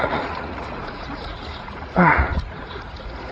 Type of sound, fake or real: fake